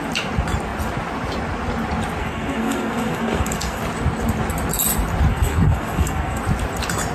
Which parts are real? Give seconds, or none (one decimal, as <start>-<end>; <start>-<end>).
0.0-2.2; 3.8-5.3; 6.4-7.1